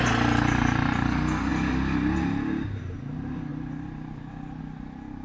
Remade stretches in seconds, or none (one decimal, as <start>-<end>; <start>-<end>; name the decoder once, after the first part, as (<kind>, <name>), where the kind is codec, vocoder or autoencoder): none